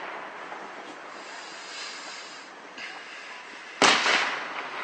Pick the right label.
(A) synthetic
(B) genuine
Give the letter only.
B